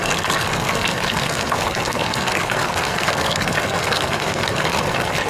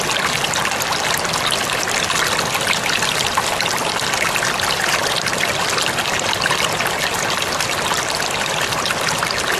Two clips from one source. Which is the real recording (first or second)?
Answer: second